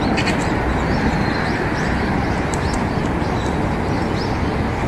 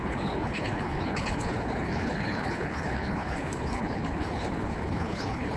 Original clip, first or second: first